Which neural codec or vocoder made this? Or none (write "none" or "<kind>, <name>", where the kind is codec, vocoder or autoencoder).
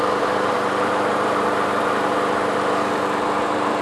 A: vocoder, BigVGAN v2